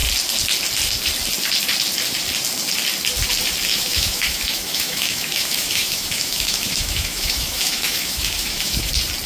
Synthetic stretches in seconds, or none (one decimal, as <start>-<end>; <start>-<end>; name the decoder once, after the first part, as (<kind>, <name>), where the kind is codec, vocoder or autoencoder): 3.7-8.9 (autoencoder, DAC-VAE)